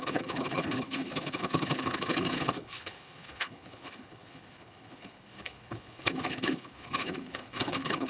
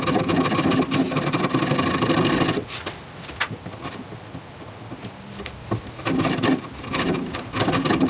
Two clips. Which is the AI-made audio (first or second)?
first